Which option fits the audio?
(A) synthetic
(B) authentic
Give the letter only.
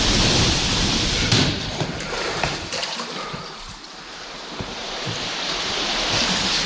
A